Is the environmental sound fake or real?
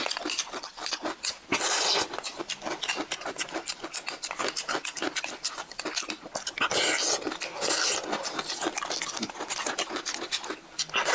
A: real